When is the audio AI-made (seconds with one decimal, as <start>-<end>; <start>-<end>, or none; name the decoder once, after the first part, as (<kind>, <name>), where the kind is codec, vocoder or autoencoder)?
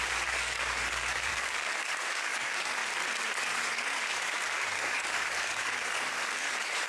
0.0-2.8 (codec, DAC); 3.4-6.9